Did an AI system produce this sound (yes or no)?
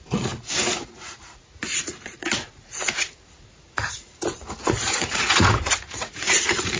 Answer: yes